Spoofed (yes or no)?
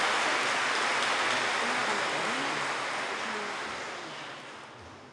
no